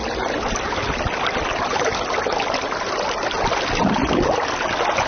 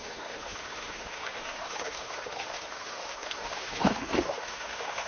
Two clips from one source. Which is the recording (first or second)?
first